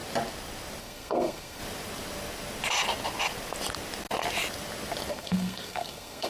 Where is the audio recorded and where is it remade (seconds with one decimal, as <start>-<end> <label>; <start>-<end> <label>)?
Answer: 0.0-0.8 recorded; 0.8-1.6 remade; 1.6-5.1 recorded; 5.1-6.3 remade